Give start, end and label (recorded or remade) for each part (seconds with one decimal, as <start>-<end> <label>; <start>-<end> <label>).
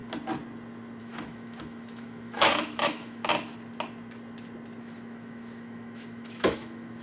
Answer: 0.0-1.0 recorded; 1.0-3.2 remade; 3.2-4.8 recorded; 4.8-7.0 remade